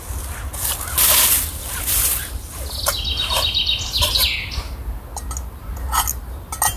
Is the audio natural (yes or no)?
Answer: yes